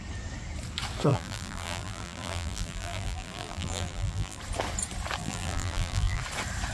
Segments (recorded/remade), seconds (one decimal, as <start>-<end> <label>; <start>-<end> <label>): 0.0-1.1 recorded; 1.1-4.4 remade; 4.4-5.2 recorded; 5.2-6.2 remade; 6.2-6.7 recorded